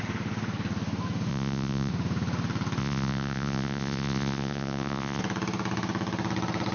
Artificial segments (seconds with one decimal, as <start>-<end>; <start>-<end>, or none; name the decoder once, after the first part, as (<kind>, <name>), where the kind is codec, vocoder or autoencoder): 1.3-1.9 (vocoder, Vocos); 2.8-5.2